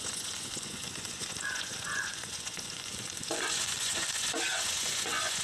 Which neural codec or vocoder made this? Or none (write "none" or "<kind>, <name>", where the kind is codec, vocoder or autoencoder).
vocoder, Vocos